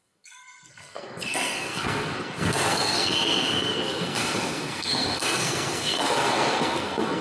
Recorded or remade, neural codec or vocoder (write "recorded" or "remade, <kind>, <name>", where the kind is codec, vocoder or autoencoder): remade, codec, SNAC